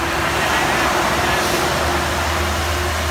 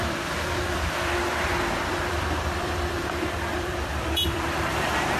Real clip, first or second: first